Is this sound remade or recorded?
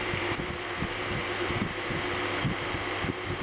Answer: remade